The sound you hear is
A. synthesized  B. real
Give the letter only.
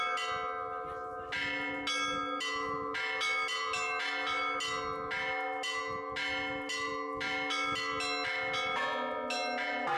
B